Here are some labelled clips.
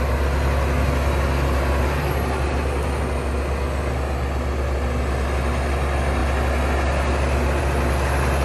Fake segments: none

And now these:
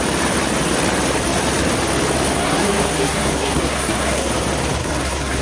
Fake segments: 2.4-4.3 (codec, SNAC); 4.8-5.4

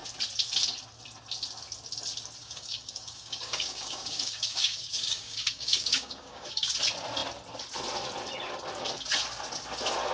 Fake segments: 2.4-6.7 (codec, DAC)

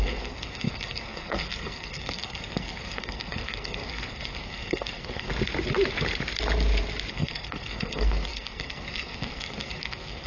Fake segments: 0.0-5.3 (codec, SNAC); 7.1-10.3

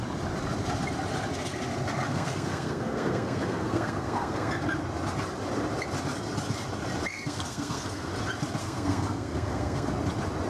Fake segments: 2.1-4.5 (codec, SNAC); 7.1-8.1; 8.6-9.9